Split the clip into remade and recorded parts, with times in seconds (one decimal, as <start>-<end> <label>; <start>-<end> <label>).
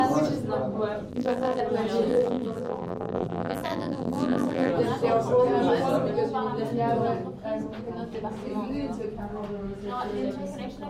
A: 0.0-1.1 recorded; 1.1-1.6 remade; 1.6-2.1 recorded; 2.1-4.7 remade; 4.7-10.9 recorded